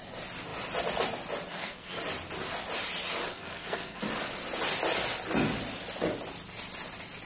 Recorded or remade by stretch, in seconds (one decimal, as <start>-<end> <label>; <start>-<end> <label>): 0.0-1.5 recorded; 1.5-2.0 remade; 2.0-3.3 recorded; 3.3-4.0 remade; 4.0-7.3 recorded